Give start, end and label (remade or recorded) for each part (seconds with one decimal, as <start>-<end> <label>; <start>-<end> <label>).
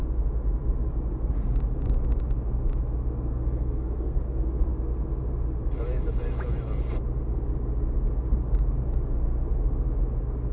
0.0-3.3 recorded; 3.3-4.2 remade; 4.2-10.5 recorded